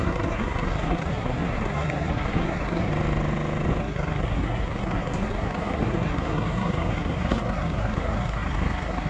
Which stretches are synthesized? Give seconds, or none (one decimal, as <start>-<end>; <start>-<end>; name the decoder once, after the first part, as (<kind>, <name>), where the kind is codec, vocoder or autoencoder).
0.0-2.9 (codec, SNAC); 3.8-9.1